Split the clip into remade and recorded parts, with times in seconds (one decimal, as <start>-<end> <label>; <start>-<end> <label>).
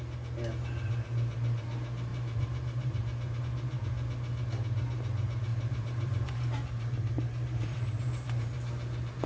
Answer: 0.0-2.1 recorded; 2.1-3.4 remade; 3.4-5.5 recorded; 5.5-9.3 remade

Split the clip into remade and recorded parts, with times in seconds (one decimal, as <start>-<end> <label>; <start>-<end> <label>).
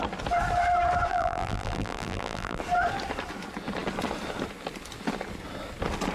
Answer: 0.0-1.1 recorded; 1.1-2.6 remade; 2.6-6.1 recorded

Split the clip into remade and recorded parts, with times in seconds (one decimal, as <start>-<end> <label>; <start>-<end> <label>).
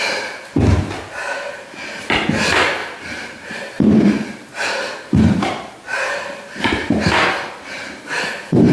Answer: 0.0-2.8 recorded; 2.8-7.0 remade; 7.0-8.7 recorded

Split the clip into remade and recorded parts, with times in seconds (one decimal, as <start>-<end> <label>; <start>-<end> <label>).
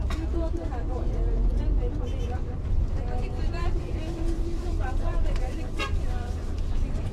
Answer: 0.0-7.1 remade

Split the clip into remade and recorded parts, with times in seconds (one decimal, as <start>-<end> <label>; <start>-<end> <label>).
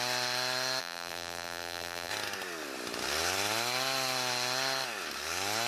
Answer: 0.0-0.8 recorded; 0.8-2.1 remade; 2.1-5.7 recorded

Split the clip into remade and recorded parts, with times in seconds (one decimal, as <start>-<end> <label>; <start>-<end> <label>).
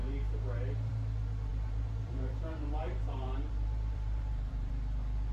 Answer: 0.0-1.5 recorded; 1.5-4.7 remade; 4.7-5.3 recorded